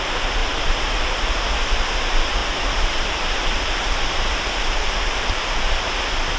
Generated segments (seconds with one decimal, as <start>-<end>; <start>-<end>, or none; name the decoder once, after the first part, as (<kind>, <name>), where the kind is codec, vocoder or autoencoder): 0.4-1.0 (vocoder, BigVGAN v2); 2.4-5.6